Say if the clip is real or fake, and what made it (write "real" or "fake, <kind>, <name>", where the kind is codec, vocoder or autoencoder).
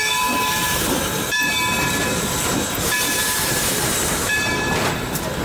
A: fake, vocoder, BigVGAN v2